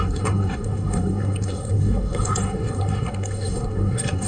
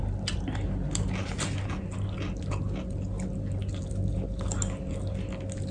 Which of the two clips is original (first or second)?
second